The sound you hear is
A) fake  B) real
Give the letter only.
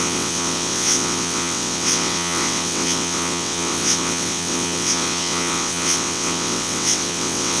A